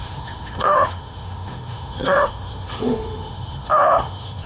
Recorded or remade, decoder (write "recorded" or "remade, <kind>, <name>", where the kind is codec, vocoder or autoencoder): remade, autoencoder, DAC-VAE